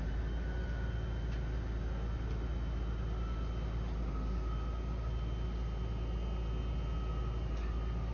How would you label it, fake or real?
real